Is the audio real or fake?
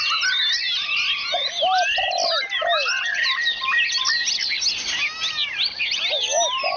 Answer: real